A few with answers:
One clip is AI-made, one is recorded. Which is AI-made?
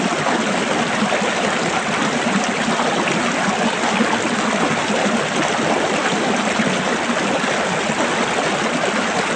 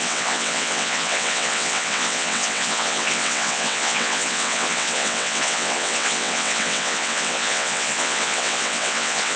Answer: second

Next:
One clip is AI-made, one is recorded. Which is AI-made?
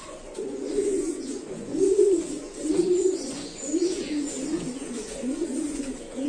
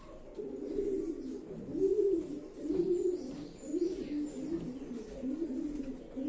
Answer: first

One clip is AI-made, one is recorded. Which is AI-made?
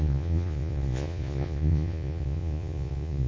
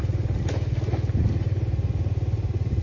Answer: first